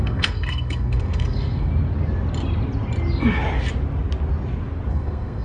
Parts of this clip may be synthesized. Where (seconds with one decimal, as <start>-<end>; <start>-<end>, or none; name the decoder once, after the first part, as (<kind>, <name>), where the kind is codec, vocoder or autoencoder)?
0.0-1.7 (codec, SNAC); 4.9-5.4